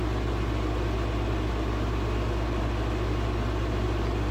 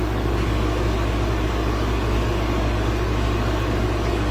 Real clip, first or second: first